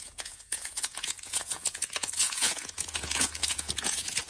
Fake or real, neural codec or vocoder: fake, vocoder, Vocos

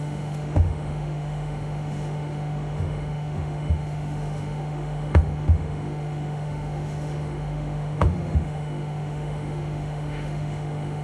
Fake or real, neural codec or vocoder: fake, autoencoder, DAC-VAE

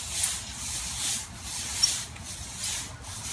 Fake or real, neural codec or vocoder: real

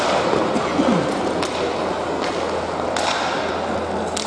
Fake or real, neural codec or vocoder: real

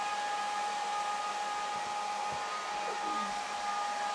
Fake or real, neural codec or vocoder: real